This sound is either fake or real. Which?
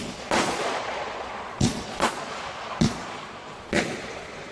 fake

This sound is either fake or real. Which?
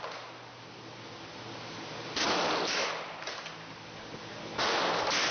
real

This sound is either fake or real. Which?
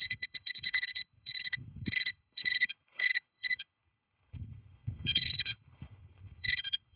fake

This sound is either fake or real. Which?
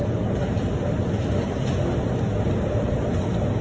real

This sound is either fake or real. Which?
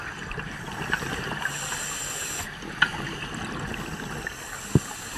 real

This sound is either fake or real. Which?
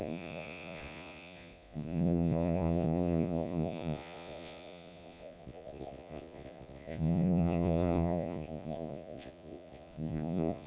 fake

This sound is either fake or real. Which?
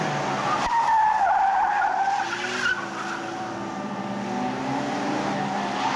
real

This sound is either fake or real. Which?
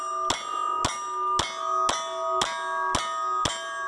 real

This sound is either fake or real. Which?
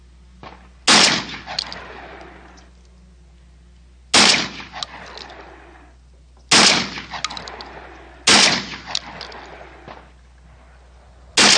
real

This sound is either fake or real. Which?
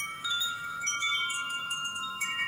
fake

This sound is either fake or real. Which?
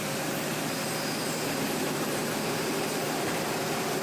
fake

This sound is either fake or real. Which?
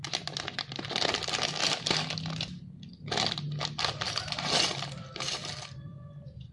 real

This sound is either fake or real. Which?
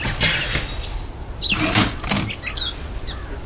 real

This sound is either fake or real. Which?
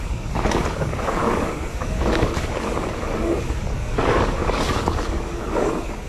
fake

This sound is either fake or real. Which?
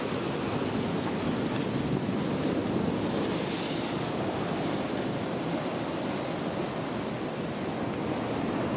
real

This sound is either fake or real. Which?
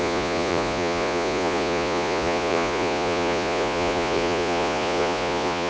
fake